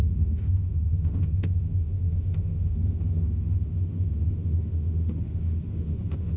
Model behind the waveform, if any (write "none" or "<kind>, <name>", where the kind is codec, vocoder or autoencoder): autoencoder, DAC-VAE